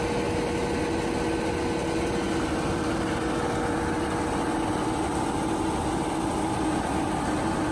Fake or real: real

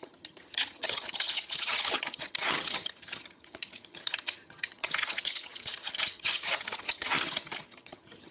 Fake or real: fake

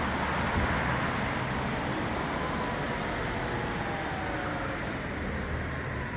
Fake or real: real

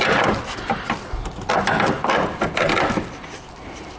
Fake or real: real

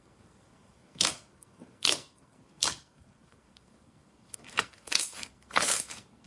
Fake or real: fake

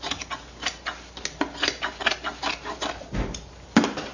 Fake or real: real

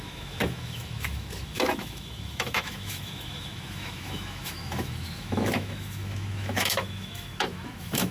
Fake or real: fake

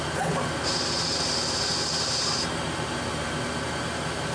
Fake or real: real